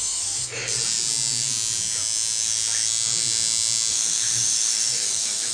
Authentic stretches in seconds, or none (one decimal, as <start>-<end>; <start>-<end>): 0.6-3.9